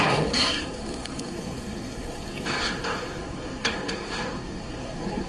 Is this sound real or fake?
fake